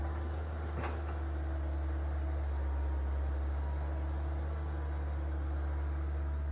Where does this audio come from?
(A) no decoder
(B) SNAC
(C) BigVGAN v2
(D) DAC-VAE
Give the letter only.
A